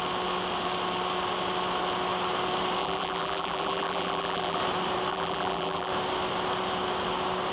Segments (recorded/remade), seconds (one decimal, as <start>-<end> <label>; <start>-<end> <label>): 0.0-2.8 recorded; 2.8-4.6 remade; 4.6-5.1 recorded; 5.1-5.9 remade; 5.9-7.5 recorded